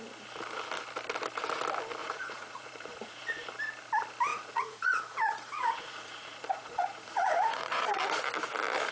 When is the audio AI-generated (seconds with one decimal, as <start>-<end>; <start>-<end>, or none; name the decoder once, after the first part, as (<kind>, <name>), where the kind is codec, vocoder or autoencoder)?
2.0-3.2 (vocoder, Vocos); 4.3-8.0